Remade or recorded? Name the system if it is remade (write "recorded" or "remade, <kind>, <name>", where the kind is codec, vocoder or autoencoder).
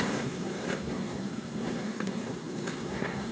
remade, codec, SNAC